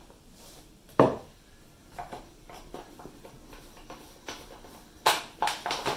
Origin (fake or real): fake